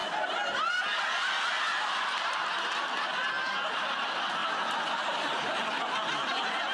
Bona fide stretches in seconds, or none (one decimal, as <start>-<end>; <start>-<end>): 0.0-6.7